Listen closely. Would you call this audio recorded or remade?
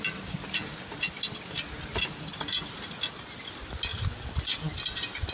recorded